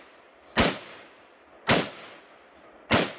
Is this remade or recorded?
recorded